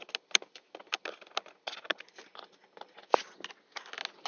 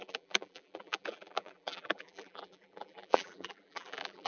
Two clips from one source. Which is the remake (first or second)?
second